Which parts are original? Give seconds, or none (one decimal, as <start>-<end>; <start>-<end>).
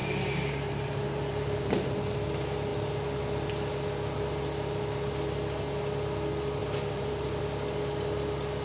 1.9-6.6; 7.4-8.6